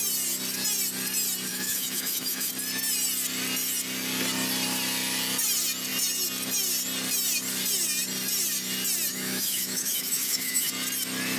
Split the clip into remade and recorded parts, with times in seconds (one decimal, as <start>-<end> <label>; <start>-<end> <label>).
0.0-1.5 recorded; 1.5-2.5 remade; 2.5-9.1 recorded; 9.1-10.7 remade; 10.7-11.4 recorded